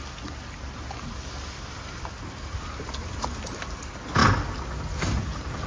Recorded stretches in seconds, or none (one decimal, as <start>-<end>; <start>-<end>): 0.0-5.7